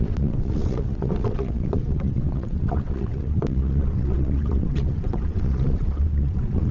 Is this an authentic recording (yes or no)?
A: no